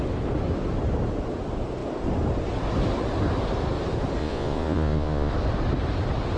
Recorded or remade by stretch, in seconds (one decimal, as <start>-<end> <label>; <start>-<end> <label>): 0.0-4.2 recorded; 4.2-5.3 remade; 5.3-6.4 recorded